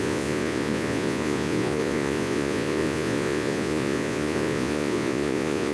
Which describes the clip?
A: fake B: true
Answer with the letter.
A